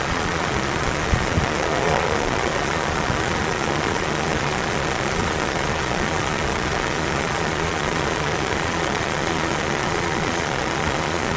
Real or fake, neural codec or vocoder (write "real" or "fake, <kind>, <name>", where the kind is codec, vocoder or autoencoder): fake, vocoder, Vocos